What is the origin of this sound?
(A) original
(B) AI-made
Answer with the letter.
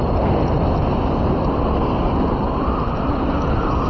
A